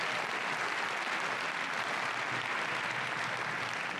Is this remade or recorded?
recorded